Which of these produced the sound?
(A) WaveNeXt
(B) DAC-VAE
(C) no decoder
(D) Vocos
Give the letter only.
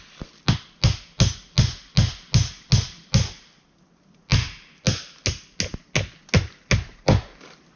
C